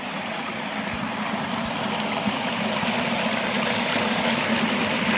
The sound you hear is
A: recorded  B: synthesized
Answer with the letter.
A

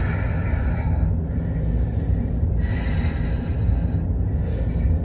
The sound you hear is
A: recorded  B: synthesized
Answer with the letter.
A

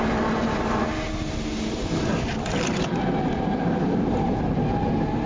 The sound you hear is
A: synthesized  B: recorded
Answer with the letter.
B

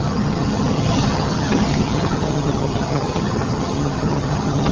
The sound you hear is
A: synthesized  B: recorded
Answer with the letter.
A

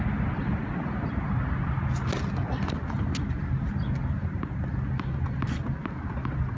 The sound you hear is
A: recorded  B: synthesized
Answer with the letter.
A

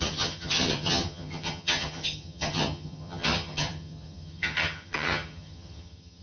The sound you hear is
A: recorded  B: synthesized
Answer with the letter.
B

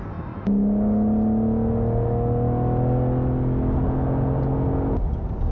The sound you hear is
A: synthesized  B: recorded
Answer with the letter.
B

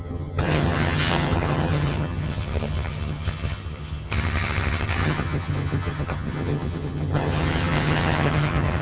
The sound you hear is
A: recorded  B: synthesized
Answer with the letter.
B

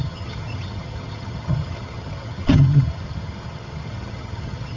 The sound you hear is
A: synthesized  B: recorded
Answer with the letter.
A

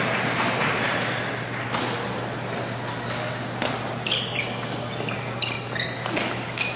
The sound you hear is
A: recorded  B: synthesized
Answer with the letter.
A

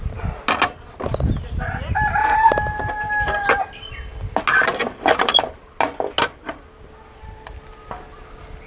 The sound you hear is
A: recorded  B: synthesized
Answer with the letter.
A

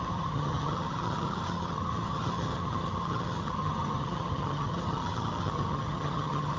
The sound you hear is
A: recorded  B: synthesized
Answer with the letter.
B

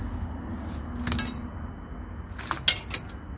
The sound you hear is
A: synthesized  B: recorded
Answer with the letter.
B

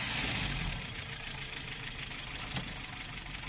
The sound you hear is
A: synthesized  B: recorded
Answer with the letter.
B